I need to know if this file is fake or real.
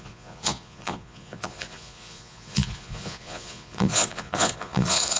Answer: fake